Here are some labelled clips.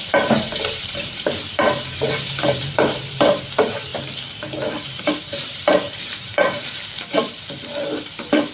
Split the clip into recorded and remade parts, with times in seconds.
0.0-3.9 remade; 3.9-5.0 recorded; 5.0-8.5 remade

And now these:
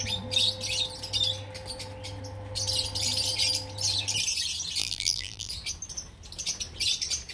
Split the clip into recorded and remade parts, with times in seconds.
0.0-4.8 recorded; 4.8-5.5 remade; 5.5-7.3 recorded

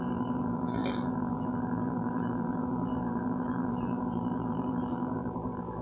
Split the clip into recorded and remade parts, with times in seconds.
0.0-5.8 remade

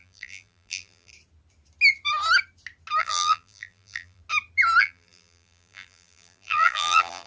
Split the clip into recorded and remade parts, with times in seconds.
0.0-1.1 remade; 1.1-3.0 recorded; 3.0-4.2 remade; 4.2-4.8 recorded; 4.8-7.3 remade

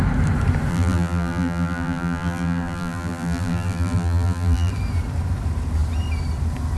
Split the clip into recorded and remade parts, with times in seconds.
0.0-0.7 recorded; 0.7-4.7 remade; 4.7-6.8 recorded

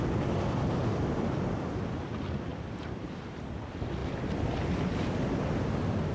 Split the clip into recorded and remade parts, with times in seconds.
0.0-2.5 recorded; 2.5-3.5 remade; 3.5-4.0 recorded; 4.0-5.2 remade; 5.2-6.1 recorded

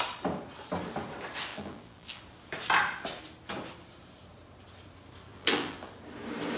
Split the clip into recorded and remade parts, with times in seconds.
0.0-1.5 recorded; 1.5-2.2 remade; 2.2-5.3 recorded; 5.3-5.9 remade; 5.9-6.6 recorded